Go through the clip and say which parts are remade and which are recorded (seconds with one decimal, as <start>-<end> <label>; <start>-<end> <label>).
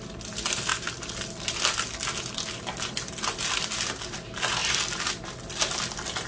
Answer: 0.0-6.3 recorded